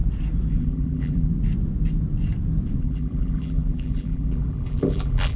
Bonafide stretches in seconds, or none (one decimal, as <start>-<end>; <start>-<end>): 0.0-0.5; 1.3-2.8